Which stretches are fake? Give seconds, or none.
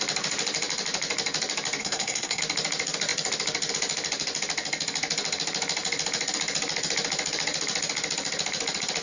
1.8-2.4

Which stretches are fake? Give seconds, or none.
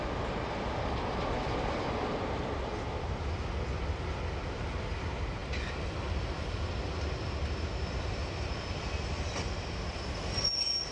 none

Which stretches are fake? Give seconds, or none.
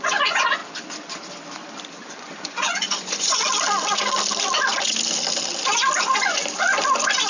0.0-0.6; 2.1-3.4; 6.0-6.4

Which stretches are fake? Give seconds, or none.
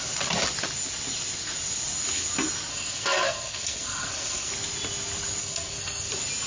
2.7-4.5; 5.4-6.1